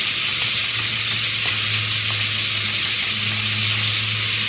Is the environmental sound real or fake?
real